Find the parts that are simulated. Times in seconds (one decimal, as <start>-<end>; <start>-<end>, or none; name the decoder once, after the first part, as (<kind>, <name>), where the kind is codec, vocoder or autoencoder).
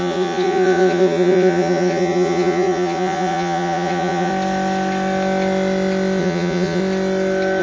0.0-4.3 (vocoder, Vocos); 6.2-6.8